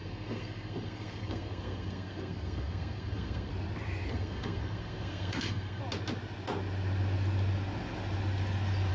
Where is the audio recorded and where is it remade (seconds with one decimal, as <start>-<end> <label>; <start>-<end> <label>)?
0.0-3.5 remade; 3.5-4.1 recorded; 4.1-5.8 remade; 5.8-8.9 recorded